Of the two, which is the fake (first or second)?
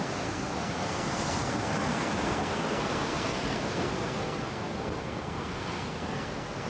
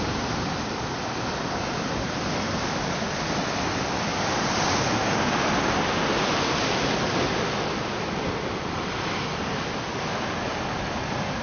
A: first